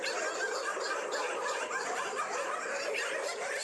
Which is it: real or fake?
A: real